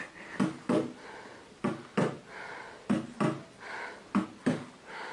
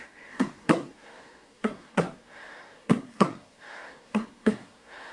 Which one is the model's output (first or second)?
second